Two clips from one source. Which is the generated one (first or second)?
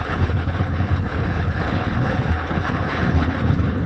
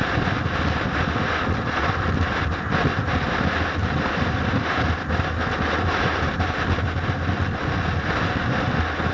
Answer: first